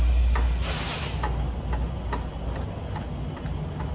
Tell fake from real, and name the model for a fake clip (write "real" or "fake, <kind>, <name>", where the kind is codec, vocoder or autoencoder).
real